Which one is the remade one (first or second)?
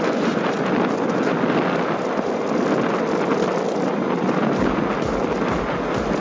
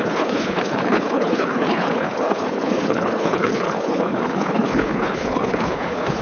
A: second